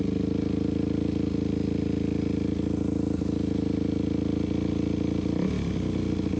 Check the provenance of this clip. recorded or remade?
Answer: recorded